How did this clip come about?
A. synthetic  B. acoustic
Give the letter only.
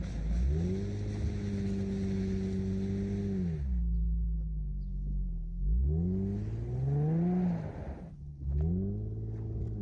B